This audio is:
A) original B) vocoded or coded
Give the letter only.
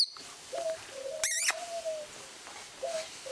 A